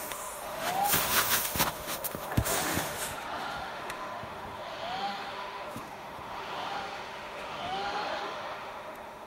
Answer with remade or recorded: remade